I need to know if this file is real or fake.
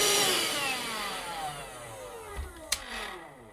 fake